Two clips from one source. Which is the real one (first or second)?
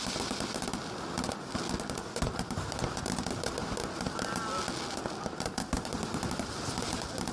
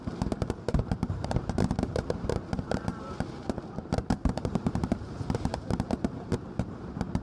first